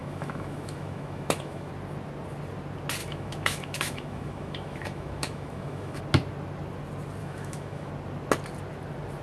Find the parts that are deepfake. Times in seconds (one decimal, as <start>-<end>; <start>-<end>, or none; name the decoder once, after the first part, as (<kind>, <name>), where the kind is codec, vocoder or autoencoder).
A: 0.0-1.7 (autoencoder, DAC-VAE); 3.0-6.0; 7.2-7.9